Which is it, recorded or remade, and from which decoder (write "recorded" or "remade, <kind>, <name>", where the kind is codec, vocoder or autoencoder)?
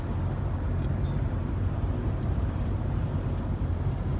remade, vocoder, BigVGAN v2